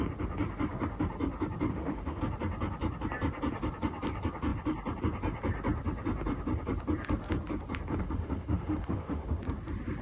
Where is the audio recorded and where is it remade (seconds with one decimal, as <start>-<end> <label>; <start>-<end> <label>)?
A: 0.0-1.7 recorded; 1.7-2.2 remade; 2.2-8.0 recorded; 8.0-9.4 remade; 9.4-10.0 recorded